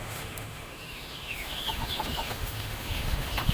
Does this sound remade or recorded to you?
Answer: remade